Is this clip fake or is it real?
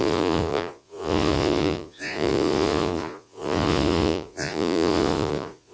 fake